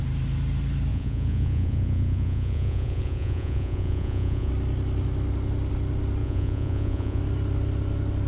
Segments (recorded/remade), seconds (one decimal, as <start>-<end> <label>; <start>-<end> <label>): 0.0-0.9 recorded; 0.9-4.5 remade; 4.5-6.2 recorded; 6.2-7.2 remade; 7.2-8.3 recorded